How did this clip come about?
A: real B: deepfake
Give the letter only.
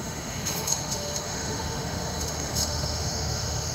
B